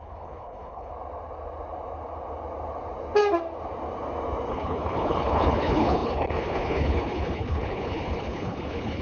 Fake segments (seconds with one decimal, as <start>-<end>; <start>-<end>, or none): 0.0-0.9; 4.5-9.0